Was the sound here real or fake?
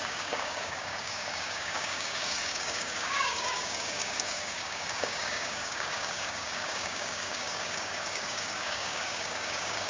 fake